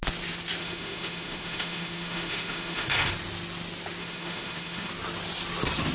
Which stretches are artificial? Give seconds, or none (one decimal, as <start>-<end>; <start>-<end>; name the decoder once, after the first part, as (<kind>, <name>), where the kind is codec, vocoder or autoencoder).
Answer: 0.6-3.1 (autoencoder, DAC-VAE); 4.0-4.9